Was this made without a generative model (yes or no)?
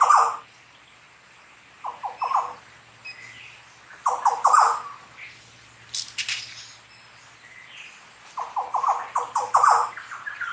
yes